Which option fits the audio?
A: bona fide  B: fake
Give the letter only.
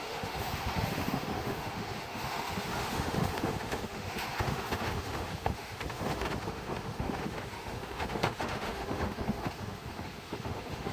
B